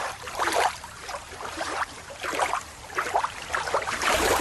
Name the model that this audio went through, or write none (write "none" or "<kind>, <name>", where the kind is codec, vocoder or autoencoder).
vocoder, BigVGAN v2